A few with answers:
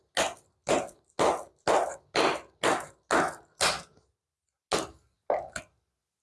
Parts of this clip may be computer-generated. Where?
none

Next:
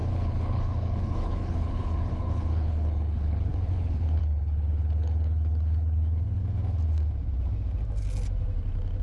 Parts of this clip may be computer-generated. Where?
0.0-6.4 (codec, HILCodec)

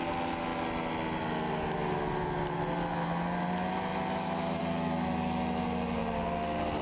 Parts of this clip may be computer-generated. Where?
none

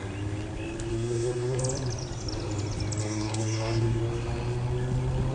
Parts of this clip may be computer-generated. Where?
0.9-1.6 (codec, SNAC); 3.0-4.0